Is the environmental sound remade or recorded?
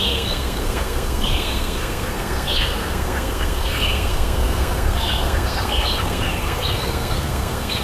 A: remade